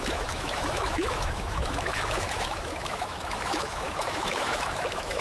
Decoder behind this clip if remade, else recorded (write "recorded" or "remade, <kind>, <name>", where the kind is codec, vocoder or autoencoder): remade, autoencoder, DAC-VAE